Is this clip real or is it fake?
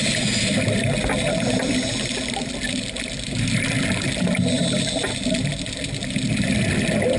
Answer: real